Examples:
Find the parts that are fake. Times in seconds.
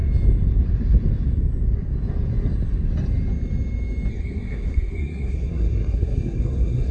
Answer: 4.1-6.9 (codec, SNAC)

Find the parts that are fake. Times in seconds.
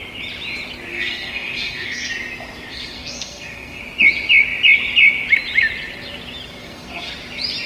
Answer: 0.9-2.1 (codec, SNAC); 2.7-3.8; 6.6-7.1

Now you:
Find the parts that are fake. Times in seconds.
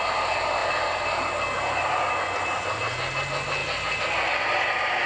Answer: none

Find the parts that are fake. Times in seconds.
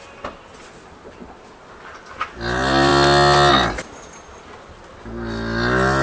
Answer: none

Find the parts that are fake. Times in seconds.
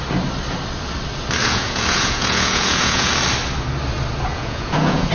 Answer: 1.4-3.1 (vocoder, Vocos); 4.3-5.1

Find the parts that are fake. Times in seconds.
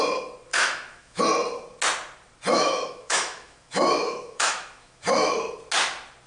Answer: 0.5-1.2 (autoencoder, DAC-VAE); 2.5-5.3